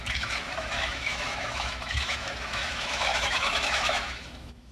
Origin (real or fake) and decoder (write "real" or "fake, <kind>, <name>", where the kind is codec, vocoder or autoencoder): fake, autoencoder, DAC-VAE